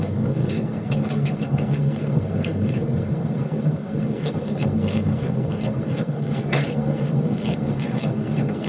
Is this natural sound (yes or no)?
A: no